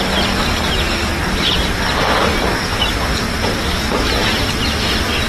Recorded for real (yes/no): yes